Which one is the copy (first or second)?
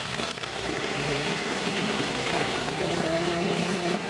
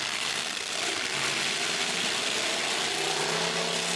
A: first